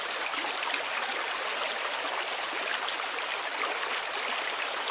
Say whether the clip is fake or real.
real